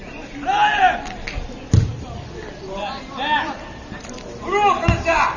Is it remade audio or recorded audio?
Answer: recorded